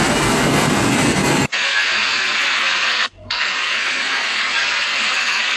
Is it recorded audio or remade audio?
remade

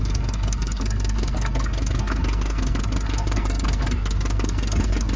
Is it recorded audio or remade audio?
remade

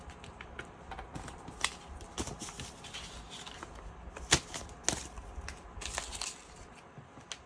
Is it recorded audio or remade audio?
recorded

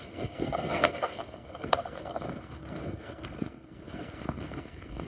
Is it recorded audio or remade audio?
remade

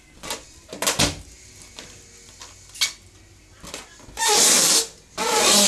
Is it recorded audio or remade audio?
recorded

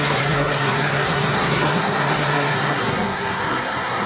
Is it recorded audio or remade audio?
remade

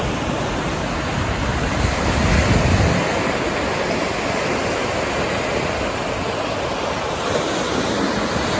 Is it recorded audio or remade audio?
recorded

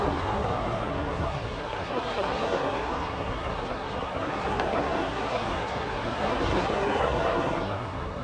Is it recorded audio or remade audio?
remade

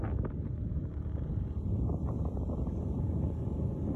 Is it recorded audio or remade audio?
recorded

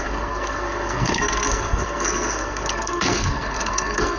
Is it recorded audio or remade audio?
remade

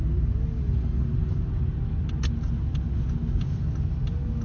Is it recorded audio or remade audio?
recorded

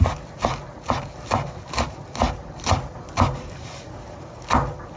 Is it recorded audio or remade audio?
recorded